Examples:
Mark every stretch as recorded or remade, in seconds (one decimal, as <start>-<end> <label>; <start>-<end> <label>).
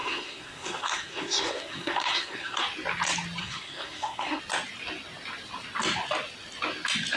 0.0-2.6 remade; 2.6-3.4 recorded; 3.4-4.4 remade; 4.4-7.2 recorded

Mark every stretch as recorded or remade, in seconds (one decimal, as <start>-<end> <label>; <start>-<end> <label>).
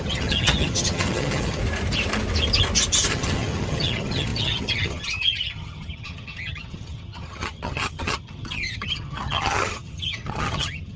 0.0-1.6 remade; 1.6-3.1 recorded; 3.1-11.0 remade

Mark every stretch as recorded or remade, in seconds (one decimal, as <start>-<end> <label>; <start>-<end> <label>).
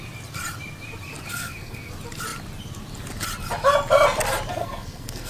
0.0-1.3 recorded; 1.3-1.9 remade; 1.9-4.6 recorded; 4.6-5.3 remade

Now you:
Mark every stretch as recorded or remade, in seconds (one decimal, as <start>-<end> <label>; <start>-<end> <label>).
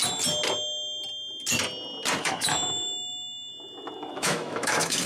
0.0-2.2 recorded; 2.2-3.5 remade; 3.5-4.1 recorded; 4.1-5.1 remade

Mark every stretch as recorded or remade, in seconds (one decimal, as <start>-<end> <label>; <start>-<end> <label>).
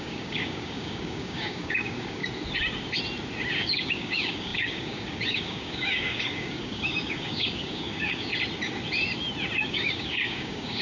0.0-2.2 remade; 2.2-3.6 recorded; 3.6-8.3 remade; 8.3-9.7 recorded; 9.7-10.8 remade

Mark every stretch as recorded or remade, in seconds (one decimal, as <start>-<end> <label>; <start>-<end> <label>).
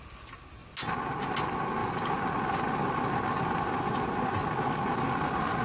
0.0-5.6 recorded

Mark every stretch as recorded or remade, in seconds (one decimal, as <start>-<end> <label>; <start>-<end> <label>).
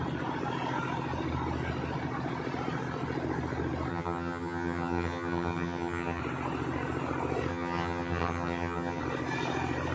0.0-3.9 recorded; 3.9-6.2 remade; 6.2-7.5 recorded; 7.5-9.0 remade; 9.0-9.9 recorded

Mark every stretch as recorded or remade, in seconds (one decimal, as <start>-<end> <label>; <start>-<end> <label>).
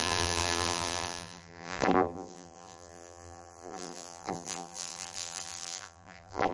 0.0-6.5 remade